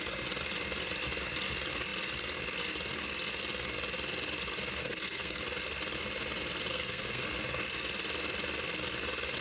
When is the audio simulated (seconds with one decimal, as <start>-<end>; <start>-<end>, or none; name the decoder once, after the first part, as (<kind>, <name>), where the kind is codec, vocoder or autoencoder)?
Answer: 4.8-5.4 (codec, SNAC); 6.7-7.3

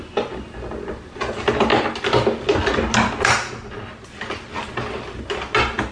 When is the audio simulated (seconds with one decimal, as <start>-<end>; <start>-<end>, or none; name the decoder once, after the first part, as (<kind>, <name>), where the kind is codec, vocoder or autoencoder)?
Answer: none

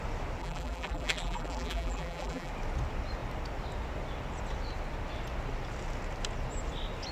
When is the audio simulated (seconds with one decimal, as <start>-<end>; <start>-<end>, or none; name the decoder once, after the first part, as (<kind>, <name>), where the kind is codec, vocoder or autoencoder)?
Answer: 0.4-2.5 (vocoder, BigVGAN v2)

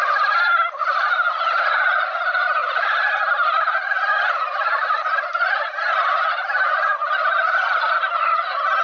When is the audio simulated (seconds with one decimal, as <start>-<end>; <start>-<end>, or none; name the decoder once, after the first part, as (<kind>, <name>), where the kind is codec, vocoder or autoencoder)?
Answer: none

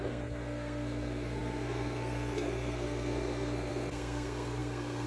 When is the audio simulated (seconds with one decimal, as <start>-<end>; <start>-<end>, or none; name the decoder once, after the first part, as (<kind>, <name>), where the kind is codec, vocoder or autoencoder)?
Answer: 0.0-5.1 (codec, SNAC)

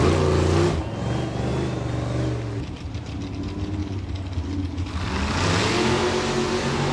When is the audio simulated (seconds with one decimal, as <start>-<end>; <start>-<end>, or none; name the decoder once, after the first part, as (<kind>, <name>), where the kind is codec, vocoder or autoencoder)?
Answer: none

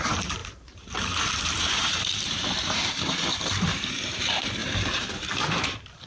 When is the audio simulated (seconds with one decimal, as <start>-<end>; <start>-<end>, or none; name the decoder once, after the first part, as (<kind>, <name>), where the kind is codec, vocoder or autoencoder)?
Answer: 0.0-6.1 (vocoder, BigVGAN v2)

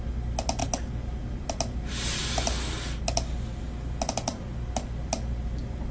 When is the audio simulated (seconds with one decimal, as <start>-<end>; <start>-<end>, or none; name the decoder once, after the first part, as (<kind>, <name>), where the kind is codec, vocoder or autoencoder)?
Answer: none